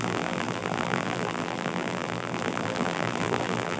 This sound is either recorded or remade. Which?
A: remade